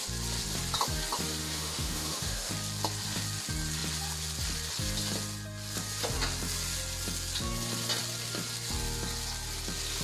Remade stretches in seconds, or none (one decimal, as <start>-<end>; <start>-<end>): 1.4-2.5